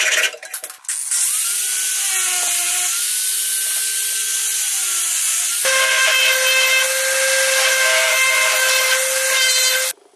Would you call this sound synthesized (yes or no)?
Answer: no